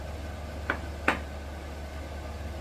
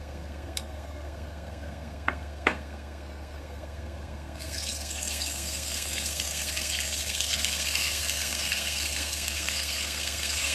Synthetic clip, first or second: second